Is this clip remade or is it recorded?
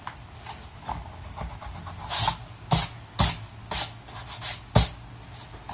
recorded